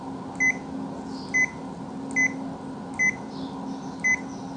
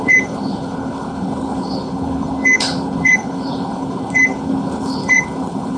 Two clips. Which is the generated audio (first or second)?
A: second